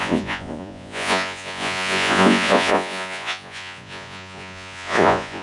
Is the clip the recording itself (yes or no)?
no